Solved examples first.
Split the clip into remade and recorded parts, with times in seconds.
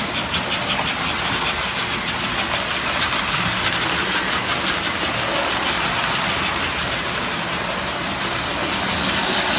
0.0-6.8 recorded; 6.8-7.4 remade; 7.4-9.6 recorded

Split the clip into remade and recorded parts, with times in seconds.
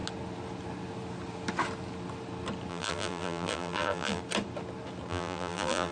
0.0-2.7 recorded; 2.7-4.2 remade; 4.2-5.1 recorded; 5.1-5.9 remade